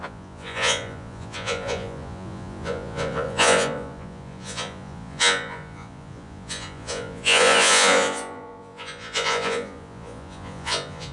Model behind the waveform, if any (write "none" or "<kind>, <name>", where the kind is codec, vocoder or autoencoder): vocoder, Vocos